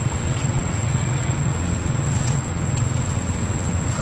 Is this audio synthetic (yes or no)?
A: yes